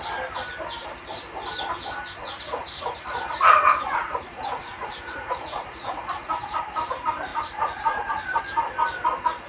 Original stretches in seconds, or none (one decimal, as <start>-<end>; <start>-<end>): 0.0-2.2; 6.6-7.3; 8.4-9.5